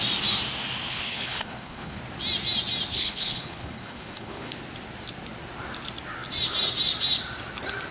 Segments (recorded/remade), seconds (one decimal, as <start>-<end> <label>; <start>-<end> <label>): 0.0-0.9 recorded; 0.9-2.0 remade; 2.0-2.9 recorded; 2.9-4.6 remade; 4.6-7.9 recorded